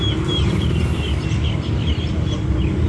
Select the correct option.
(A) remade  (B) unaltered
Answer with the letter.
B